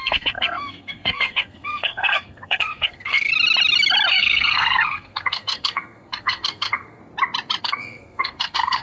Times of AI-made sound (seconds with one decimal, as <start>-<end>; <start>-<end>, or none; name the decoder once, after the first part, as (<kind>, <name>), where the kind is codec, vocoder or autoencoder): 0.0-3.3 (codec, SNAC); 4.1-7.0; 7.6-8.8